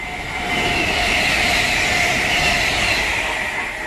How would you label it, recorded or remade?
recorded